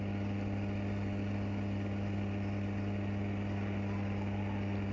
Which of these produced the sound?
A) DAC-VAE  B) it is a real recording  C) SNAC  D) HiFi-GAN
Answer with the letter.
B